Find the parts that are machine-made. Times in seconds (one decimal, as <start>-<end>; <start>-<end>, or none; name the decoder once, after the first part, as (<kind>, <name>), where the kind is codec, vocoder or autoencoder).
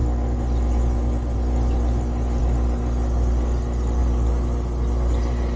4.0-5.6 (vocoder, BigVGAN v2)